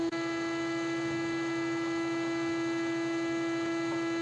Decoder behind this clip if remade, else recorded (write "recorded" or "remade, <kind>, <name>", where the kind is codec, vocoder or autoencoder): recorded